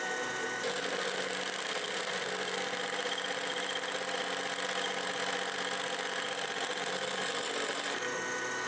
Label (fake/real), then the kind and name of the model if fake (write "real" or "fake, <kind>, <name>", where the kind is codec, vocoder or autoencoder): real